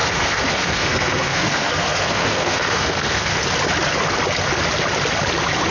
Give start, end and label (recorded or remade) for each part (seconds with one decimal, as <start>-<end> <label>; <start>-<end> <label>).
0.0-3.4 remade; 3.4-5.7 recorded